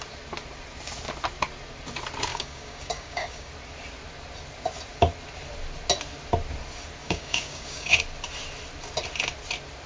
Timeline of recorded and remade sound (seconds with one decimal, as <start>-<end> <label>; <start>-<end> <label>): 0.0-2.3 recorded; 2.3-3.5 remade; 3.5-7.0 recorded; 7.0-8.0 remade; 8.0-9.9 recorded